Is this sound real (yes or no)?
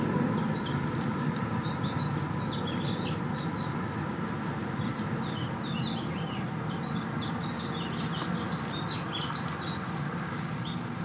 yes